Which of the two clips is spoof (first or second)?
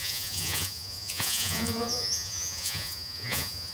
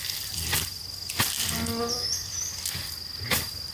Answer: first